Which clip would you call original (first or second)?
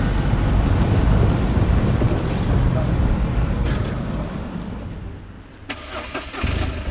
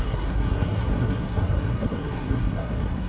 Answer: first